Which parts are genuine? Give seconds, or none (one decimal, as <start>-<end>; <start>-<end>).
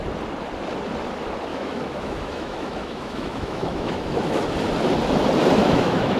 0.0-1.5; 4.4-5.6